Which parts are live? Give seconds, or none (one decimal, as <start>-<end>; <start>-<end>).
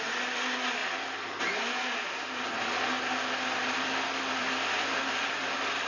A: 0.0-5.9